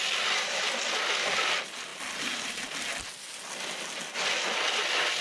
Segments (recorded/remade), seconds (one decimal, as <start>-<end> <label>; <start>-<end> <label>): 0.0-5.2 recorded